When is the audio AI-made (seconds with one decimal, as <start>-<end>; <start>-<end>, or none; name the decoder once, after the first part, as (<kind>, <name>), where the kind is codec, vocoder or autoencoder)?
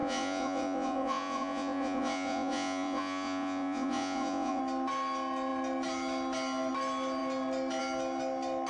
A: 0.0-4.6 (vocoder, Vocos)